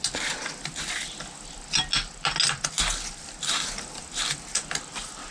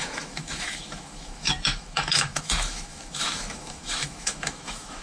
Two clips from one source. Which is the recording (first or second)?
first